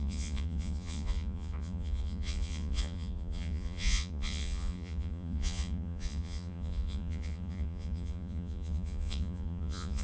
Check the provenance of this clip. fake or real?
fake